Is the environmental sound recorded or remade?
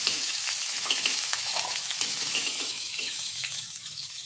remade